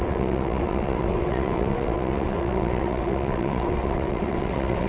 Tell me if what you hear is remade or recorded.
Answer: remade